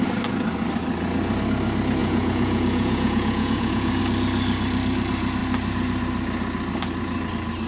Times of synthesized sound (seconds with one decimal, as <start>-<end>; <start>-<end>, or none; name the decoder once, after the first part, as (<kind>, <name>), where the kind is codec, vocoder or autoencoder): 2.0-4.0 (vocoder, Vocos)